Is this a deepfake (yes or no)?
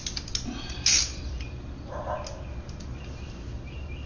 no